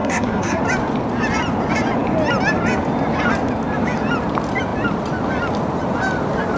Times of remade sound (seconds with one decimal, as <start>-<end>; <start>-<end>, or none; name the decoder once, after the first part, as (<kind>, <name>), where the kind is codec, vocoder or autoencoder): 0.0-0.6 (codec, SNAC)